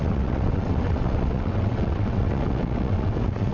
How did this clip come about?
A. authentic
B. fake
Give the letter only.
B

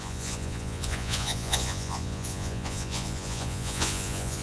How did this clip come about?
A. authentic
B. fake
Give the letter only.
B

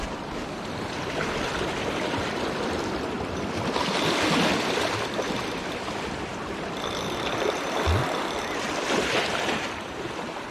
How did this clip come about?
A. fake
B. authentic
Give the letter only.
A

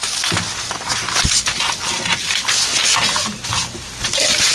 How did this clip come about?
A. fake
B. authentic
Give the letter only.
B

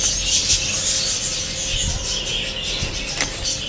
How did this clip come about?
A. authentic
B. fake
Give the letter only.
A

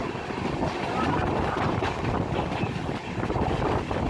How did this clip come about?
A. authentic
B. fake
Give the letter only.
A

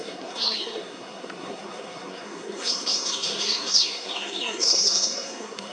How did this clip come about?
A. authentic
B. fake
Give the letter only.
B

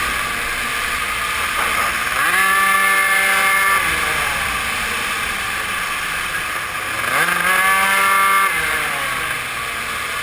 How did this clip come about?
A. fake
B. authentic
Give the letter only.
B